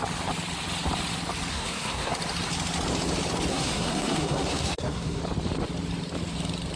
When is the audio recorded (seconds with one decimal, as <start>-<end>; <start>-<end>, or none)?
0.0-1.5; 2.1-3.5; 5.2-6.8